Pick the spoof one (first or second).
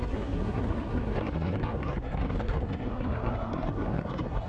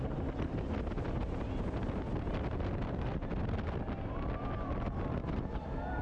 first